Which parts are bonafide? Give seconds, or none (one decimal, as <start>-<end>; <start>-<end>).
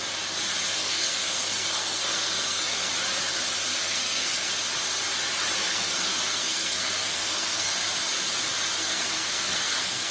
0.0-0.8; 2.9-3.7; 4.5-5.6; 7.7-8.8